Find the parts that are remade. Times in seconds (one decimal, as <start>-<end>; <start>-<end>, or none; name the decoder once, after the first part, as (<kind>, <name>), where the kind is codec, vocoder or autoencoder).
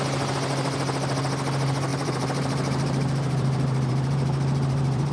1.9-5.1 (vocoder, BigVGAN v2)